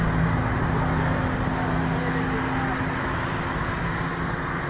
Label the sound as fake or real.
real